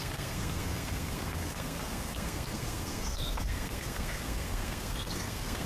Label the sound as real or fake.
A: fake